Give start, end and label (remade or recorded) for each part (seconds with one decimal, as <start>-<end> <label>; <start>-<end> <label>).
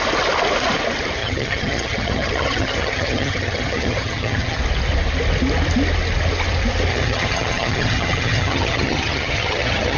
0.0-1.2 recorded; 1.2-4.6 remade; 4.6-6.9 recorded; 6.9-10.0 remade